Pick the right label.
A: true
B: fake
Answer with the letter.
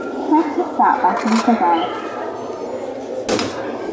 A